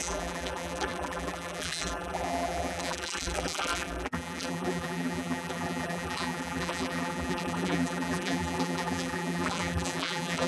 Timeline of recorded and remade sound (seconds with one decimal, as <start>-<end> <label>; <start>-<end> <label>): 0.0-10.5 remade